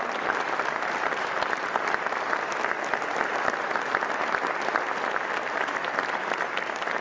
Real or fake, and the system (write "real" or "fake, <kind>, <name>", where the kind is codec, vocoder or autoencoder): real